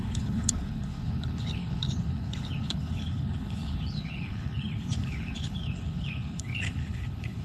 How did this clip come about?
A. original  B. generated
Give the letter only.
B